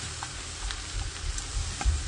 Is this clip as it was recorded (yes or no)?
no